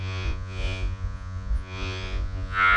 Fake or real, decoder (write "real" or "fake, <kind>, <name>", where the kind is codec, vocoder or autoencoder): fake, vocoder, Vocos